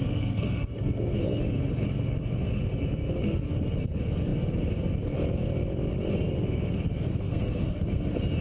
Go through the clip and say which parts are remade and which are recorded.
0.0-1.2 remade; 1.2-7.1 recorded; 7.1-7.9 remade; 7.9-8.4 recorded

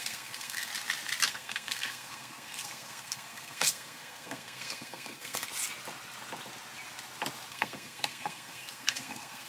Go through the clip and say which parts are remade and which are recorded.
0.0-0.7 remade; 0.7-1.3 recorded; 1.3-5.5 remade; 5.5-7.5 recorded; 7.5-9.5 remade

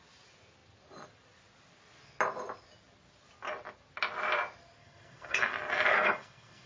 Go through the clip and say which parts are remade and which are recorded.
0.0-4.8 recorded; 4.8-5.5 remade; 5.5-5.9 recorded; 5.9-6.7 remade

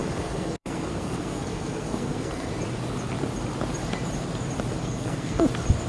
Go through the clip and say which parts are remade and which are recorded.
0.0-2.5 remade; 2.5-4.8 recorded; 4.8-5.4 remade; 5.4-5.9 recorded

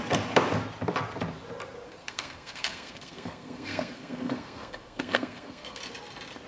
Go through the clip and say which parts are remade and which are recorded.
0.0-1.9 recorded; 1.9-5.8 remade; 5.8-6.5 recorded

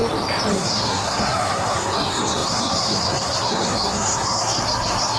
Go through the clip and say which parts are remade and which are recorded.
0.0-0.5 recorded; 0.5-5.2 remade

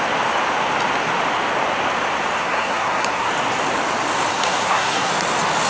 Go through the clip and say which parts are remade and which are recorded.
0.0-2.4 recorded; 2.4-3.3 remade; 3.3-4.3 recorded; 4.3-5.1 remade; 5.1-5.7 recorded